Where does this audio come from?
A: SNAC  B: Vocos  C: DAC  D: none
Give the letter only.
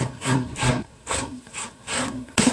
A